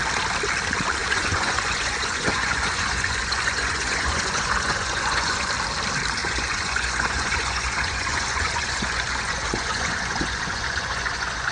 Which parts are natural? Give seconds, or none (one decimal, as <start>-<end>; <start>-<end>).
0.0-1.0; 5.5-6.2